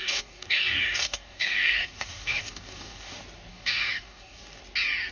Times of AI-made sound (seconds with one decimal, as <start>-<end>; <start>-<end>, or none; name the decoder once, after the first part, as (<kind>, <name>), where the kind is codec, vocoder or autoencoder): 0.0-3.1 (codec, DAC); 3.5-4.6